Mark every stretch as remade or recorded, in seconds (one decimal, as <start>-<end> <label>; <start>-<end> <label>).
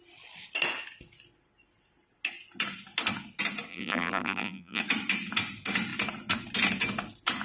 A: 0.0-3.7 recorded; 3.7-4.8 remade; 4.8-7.4 recorded